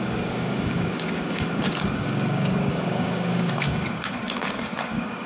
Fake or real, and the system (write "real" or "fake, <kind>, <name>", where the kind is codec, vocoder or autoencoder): fake, codec, DAC